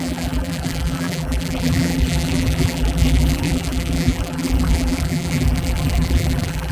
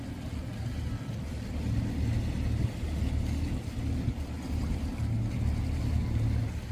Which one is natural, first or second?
second